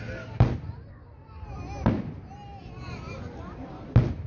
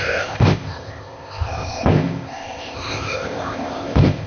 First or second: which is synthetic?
second